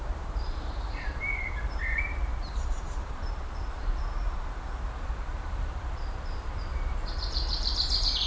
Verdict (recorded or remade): remade